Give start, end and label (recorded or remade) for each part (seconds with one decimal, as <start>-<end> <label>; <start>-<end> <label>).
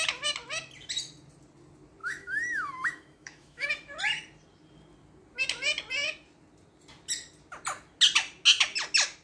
0.0-2.0 recorded; 2.0-3.7 remade; 3.7-9.2 recorded